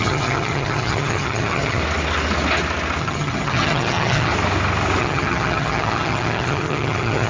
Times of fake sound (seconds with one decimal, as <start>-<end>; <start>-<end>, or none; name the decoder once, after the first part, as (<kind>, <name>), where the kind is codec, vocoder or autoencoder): 0.0-1.8 (vocoder, HiFi-GAN); 3.0-4.3; 5.0-7.3